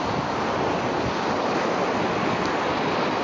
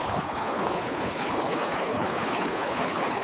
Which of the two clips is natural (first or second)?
first